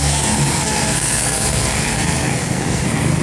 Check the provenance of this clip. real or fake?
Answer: fake